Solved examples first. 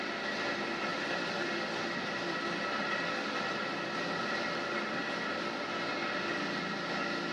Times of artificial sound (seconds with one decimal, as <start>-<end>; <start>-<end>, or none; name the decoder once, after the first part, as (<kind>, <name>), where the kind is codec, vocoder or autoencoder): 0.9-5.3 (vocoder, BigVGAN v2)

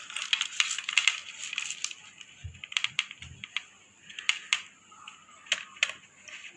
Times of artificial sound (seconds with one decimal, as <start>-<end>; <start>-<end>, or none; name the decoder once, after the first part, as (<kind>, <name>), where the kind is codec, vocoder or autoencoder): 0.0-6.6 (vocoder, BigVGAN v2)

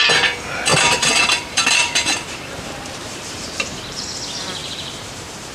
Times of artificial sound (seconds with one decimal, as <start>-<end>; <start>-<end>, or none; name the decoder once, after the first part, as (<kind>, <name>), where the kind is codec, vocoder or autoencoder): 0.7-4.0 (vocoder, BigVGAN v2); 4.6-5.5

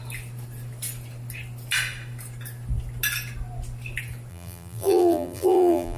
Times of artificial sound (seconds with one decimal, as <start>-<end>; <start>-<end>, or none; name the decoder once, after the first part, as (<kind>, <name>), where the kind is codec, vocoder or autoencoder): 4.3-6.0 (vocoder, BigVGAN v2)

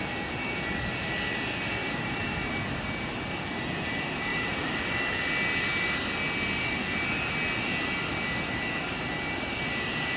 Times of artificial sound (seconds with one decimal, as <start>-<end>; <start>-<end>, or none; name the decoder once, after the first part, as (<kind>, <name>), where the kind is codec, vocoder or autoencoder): 1.8-2.5 (vocoder, BigVGAN v2); 4.3-5.0

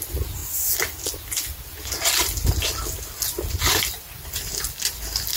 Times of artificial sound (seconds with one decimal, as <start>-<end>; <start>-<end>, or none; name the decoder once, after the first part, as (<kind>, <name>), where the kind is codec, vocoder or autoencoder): 0.0-0.4 (vocoder, BigVGAN v2); 3.6-5.4

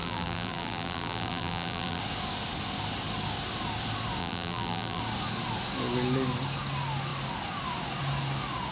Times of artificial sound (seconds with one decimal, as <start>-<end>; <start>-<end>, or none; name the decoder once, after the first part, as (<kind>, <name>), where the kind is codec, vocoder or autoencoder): 0.0-2.0 (vocoder, BigVGAN v2); 4.2-5.0

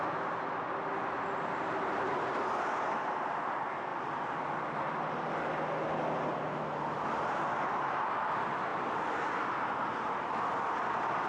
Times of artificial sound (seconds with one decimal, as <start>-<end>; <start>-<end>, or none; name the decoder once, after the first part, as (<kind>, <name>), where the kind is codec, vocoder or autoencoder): 3.9-5.1 (vocoder, BigVGAN v2); 8.7-9.4